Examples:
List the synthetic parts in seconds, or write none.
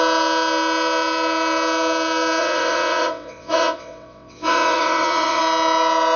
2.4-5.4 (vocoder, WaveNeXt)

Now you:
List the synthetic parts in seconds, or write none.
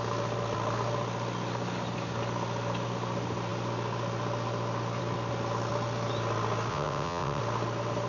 6.7-7.4 (vocoder, WaveNeXt)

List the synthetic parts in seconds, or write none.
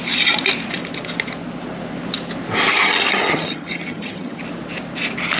2.7-4.4 (vocoder, HiFi-GAN)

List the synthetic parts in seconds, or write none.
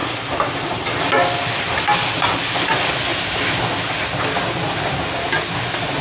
0.0-1.8 (vocoder, BigVGAN v2); 3.1-3.6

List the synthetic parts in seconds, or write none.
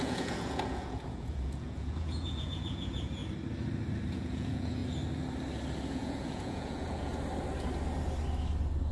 0.0-3.2 (vocoder, Vocos); 4.1-4.8; 5.9-7.1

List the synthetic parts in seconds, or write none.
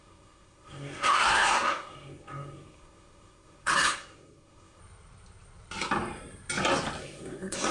0.0-4.8 (codec, SNAC); 7.0-7.7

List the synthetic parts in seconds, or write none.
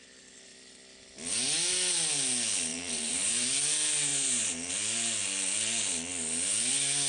2.7-3.3 (vocoder, BigVGAN v2); 4.1-4.7